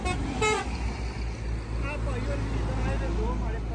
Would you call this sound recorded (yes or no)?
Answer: yes